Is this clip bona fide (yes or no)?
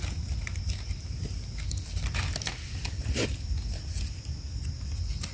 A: yes